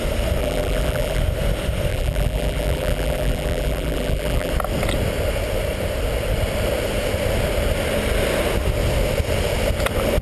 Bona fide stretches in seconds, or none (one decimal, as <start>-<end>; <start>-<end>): 0.0-0.4; 1.2-1.9; 4.5-10.2